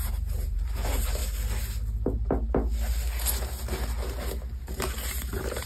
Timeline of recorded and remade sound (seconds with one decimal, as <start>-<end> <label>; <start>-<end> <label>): 0.0-1.2 remade; 1.2-4.6 recorded; 4.6-5.7 remade